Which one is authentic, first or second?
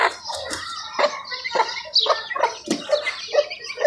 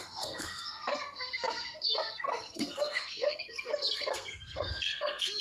first